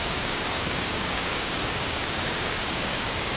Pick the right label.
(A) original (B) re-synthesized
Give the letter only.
B